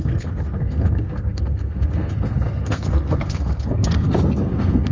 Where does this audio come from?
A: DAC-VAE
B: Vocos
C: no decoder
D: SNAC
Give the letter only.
D